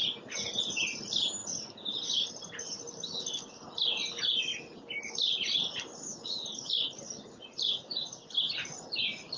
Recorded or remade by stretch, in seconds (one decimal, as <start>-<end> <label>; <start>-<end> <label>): 0.0-9.4 recorded